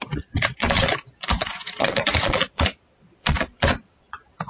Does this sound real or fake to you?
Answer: fake